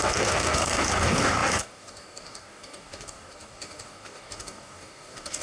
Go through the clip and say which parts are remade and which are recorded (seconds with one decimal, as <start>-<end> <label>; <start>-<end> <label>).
0.0-5.4 remade